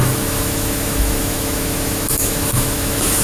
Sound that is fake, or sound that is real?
fake